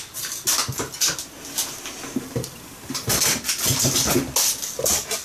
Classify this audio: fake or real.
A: real